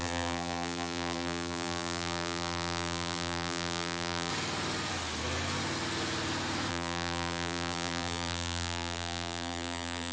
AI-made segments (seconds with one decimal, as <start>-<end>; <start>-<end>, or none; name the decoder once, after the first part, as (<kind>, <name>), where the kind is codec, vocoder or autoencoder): 0.0-4.3 (vocoder, BigVGAN v2); 6.7-10.1

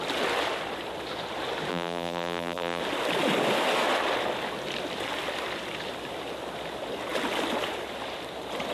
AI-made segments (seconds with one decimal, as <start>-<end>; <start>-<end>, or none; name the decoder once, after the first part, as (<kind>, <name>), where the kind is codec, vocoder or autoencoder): 1.7-2.8 (vocoder, BigVGAN v2)

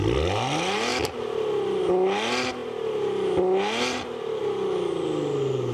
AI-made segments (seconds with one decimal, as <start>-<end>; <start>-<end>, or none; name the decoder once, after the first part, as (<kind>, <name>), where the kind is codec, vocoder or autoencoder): none

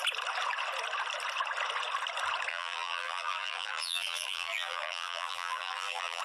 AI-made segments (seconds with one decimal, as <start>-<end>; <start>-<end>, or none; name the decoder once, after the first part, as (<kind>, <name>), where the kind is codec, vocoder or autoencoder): 2.5-6.2 (vocoder, BigVGAN v2)